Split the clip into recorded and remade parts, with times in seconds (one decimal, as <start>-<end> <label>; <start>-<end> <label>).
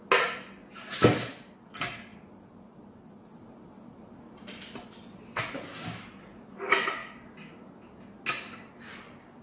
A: 0.0-9.4 recorded